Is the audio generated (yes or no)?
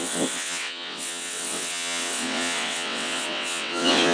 yes